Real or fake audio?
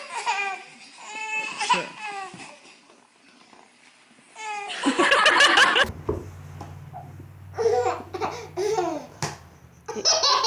real